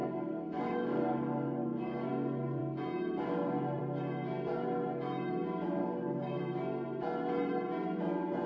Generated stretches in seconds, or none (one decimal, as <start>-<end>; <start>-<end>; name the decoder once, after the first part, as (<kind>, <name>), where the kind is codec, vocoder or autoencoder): 0.0-2.1 (codec, DAC); 5.8-6.4